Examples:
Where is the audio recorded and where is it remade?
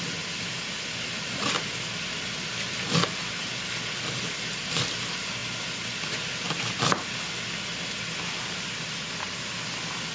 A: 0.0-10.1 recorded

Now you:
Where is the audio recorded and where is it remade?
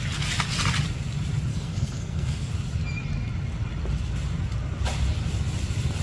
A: 0.0-1.5 recorded; 1.5-2.5 remade; 2.5-6.0 recorded